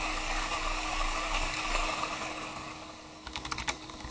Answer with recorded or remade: remade